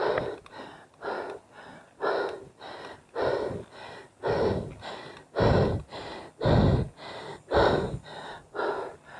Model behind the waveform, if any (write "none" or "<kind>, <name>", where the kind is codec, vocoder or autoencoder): none